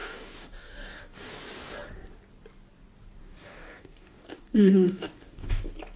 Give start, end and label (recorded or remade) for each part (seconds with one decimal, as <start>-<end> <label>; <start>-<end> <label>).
0.0-1.3 remade; 1.3-3.2 recorded; 3.2-5.6 remade; 5.6-6.0 recorded